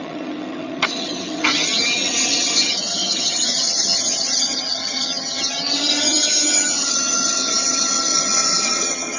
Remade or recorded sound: remade